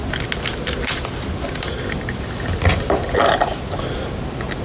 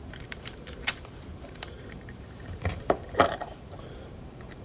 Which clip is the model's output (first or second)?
second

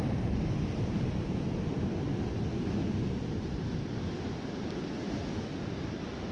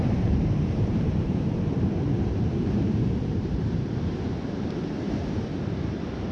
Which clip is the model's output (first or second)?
second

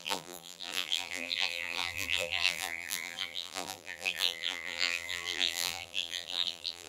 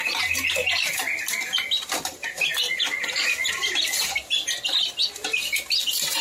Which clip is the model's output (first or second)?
first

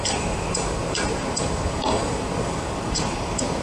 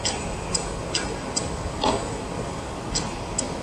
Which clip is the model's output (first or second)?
first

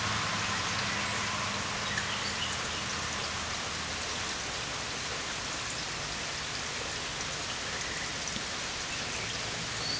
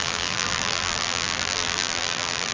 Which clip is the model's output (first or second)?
second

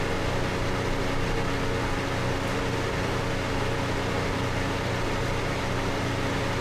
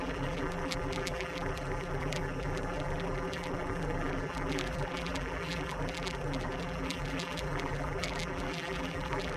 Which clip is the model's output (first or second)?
second